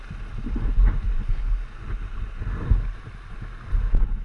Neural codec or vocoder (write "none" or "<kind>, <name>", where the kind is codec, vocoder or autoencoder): none